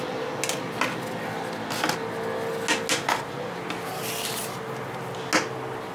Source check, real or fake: real